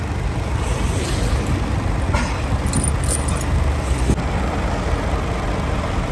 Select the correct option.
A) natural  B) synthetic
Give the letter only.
A